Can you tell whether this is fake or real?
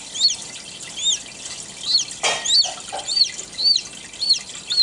real